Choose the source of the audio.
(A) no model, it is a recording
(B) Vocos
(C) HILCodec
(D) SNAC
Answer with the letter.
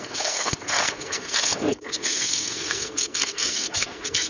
D